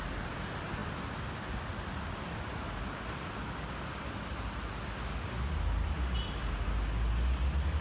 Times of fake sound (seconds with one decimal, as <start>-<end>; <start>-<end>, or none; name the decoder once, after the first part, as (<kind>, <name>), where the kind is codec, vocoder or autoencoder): none